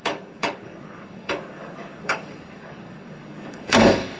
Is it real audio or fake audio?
fake